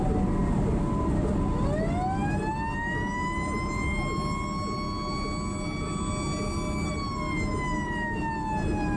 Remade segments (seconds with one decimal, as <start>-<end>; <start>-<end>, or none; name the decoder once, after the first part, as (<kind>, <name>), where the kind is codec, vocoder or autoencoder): none